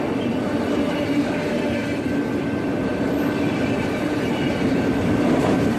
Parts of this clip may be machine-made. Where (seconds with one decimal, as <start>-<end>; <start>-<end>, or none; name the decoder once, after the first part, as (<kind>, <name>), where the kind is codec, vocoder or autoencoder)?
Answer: 2.9-5.8 (vocoder, BigVGAN v2)